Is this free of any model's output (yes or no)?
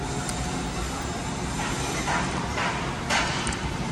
no